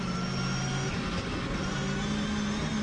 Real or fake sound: real